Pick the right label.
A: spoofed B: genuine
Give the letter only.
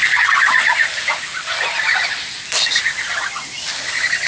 B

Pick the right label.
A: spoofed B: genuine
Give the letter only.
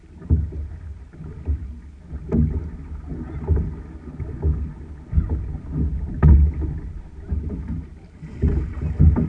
B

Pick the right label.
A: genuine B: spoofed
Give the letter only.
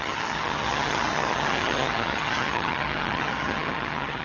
B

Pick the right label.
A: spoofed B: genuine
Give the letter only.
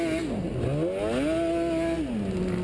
B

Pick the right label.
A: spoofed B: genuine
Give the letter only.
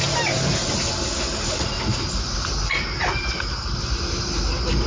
B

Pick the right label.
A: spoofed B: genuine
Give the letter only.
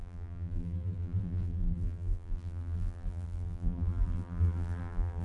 A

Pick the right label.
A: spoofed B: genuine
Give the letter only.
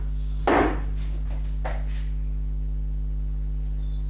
B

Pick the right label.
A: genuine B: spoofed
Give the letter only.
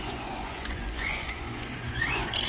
B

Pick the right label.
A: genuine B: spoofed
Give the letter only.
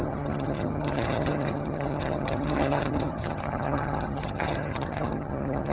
B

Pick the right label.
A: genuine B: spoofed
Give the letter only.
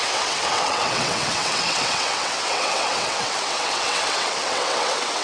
B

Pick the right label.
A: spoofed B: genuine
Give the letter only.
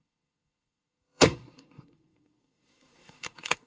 A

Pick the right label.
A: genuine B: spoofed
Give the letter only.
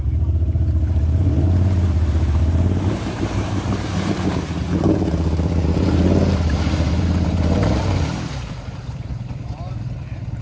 B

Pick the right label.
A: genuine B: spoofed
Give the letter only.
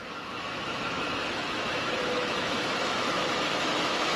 B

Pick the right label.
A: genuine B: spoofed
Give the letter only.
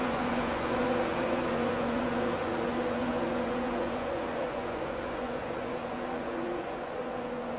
B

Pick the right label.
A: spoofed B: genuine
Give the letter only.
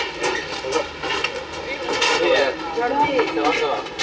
B